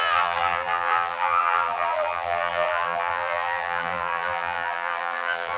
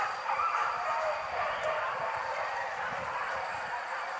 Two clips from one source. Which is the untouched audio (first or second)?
second